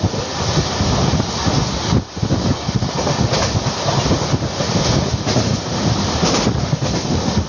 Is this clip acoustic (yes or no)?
yes